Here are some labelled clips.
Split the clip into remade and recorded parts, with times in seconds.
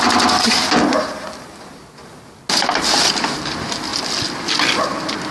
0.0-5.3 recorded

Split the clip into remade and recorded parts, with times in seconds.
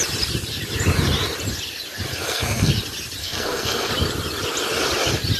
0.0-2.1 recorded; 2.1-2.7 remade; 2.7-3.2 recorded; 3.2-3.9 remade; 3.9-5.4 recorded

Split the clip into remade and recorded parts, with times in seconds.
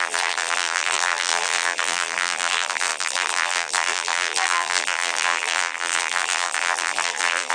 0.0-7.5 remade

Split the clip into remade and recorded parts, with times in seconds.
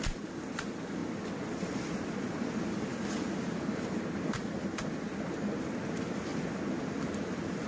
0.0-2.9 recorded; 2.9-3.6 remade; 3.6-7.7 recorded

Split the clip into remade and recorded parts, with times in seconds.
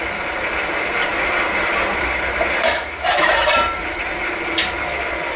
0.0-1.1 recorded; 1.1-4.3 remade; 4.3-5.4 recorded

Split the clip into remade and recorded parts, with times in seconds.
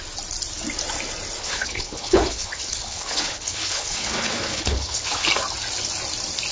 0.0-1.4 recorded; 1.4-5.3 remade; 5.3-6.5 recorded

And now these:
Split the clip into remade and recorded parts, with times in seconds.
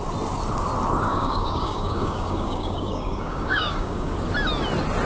0.0-1.1 recorded; 1.1-4.1 remade; 4.1-5.0 recorded